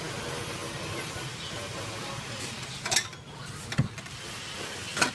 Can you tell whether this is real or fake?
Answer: real